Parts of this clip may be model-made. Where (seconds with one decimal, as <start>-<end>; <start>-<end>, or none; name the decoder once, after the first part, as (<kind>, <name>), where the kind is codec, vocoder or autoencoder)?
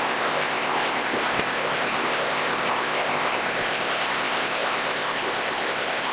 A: 0.0-6.1 (codec, ZipCodec)